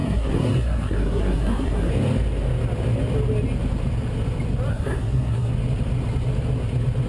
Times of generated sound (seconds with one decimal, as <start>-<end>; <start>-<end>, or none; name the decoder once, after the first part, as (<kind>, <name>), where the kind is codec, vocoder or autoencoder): 0.0-1.9 (codec, SNAC); 4.7-5.5